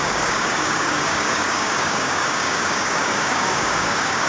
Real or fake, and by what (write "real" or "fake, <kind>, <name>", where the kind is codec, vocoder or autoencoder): fake, codec, DAC